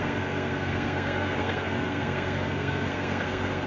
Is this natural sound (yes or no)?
no